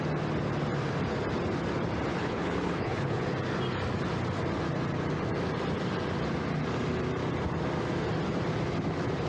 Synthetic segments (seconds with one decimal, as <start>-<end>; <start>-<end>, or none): 2.1-3.2